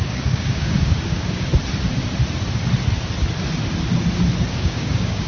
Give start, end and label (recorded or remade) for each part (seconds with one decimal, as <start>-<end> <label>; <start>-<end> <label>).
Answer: 0.0-1.5 remade; 1.5-4.5 recorded; 4.5-5.3 remade